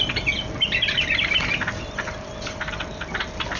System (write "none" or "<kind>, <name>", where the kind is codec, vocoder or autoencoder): none